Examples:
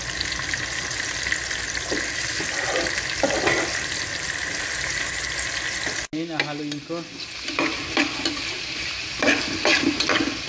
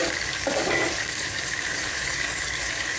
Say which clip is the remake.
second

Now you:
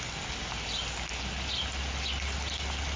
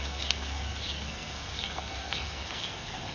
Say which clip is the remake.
second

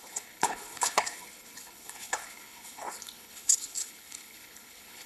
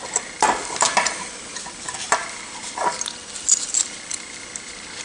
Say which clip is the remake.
first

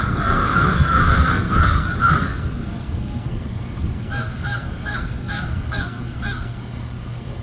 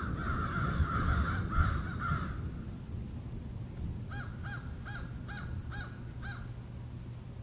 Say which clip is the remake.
first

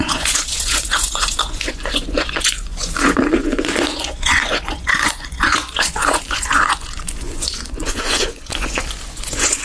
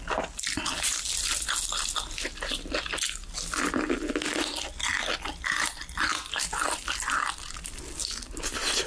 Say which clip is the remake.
first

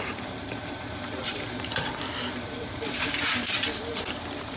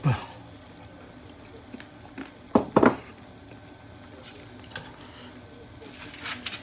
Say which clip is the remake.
first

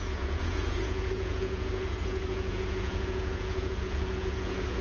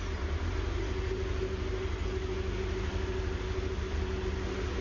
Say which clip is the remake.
first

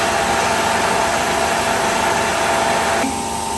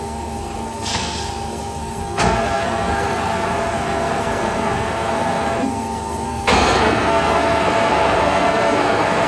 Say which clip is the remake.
second